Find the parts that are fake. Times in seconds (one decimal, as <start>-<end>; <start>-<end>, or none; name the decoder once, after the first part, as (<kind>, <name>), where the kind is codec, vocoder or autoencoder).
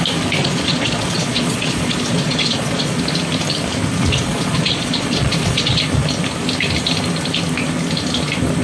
0.4-3.0 (vocoder, Vocos); 4.0-5.8